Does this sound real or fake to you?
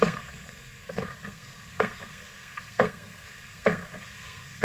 fake